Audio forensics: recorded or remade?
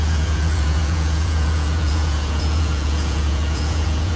remade